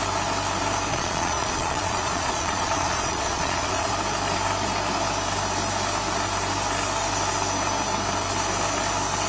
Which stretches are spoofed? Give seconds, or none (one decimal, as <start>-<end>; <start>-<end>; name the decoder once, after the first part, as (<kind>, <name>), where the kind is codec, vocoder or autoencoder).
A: 0.9-3.9 (vocoder, Vocos)

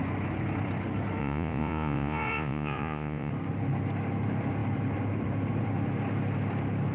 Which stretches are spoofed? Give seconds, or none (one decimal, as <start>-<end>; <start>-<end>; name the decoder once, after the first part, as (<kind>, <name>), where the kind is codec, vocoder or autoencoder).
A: 1.2-3.3 (vocoder, Vocos)

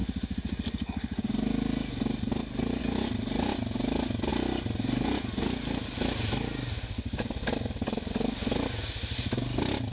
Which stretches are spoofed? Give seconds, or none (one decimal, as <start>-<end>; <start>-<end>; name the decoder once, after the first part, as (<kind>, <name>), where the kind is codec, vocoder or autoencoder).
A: none

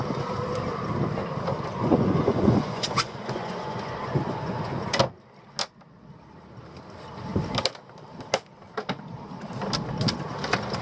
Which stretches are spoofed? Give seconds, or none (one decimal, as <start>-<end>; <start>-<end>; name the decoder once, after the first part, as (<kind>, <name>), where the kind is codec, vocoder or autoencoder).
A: 1.7-5.0 (vocoder, Vocos)

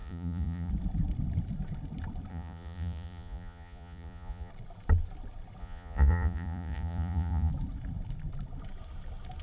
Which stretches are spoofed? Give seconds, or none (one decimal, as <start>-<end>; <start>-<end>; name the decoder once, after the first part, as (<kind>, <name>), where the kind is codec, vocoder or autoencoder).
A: 0.0-0.7 (vocoder, Vocos); 2.3-4.5; 5.6-7.5